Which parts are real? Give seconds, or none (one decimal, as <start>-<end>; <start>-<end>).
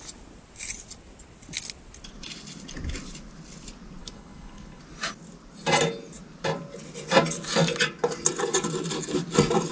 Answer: 0.0-4.0; 4.8-9.7